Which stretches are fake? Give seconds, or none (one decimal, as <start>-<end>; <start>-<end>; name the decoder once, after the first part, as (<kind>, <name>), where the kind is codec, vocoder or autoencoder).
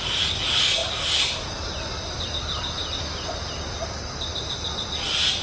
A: none